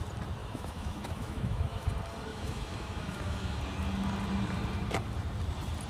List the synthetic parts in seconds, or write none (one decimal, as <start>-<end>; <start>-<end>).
0.4-1.9; 2.3-3.6